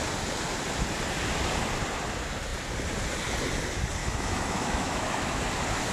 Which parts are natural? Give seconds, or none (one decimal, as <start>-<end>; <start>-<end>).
0.0-4.0; 5.4-5.9